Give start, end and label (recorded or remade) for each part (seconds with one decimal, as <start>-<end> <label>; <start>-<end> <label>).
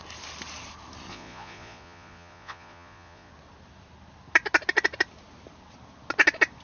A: 0.0-1.1 recorded; 1.1-3.3 remade; 3.3-6.6 recorded